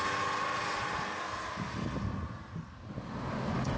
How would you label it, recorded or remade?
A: recorded